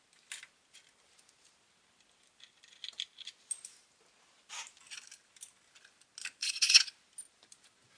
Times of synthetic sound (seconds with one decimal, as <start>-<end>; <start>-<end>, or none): 6.4-6.9